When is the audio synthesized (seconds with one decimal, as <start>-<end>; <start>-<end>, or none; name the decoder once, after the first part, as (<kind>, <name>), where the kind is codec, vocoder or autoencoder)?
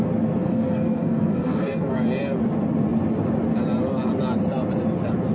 0.4-1.9 (codec, SNAC)